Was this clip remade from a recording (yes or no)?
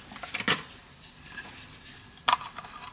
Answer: no